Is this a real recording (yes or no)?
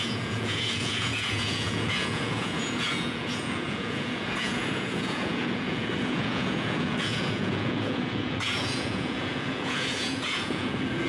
no